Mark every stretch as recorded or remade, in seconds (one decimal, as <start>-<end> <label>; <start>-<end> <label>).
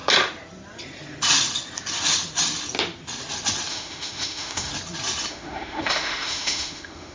0.0-3.7 recorded; 3.7-4.7 remade; 4.7-5.3 recorded; 5.3-7.1 remade